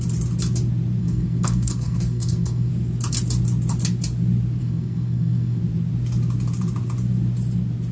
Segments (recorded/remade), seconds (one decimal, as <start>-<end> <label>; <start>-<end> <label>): 0.0-1.0 recorded; 1.0-2.7 remade; 2.7-4.6 recorded; 4.6-5.6 remade; 5.6-7.9 recorded